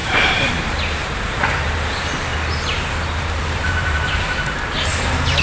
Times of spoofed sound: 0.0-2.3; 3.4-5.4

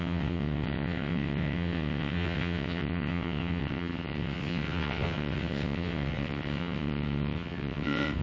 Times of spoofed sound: 0.0-8.2

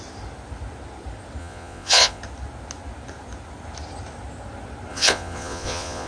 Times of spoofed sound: 1.4-2.2; 4.9-6.1

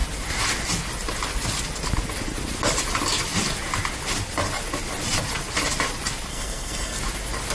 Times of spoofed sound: 6.3-7.0

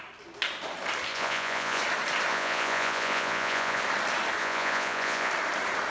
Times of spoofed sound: 1.1-1.8; 2.3-3.8; 4.4-5.3

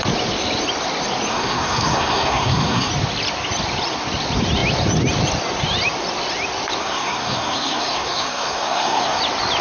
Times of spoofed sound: 1.3-2.9; 6.8-9.2

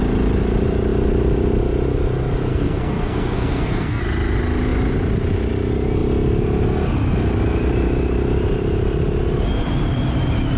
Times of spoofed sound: 2.5-4.0